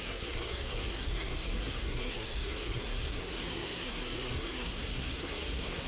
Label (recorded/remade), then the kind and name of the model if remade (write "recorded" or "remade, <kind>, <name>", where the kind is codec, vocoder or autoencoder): remade, codec, SNAC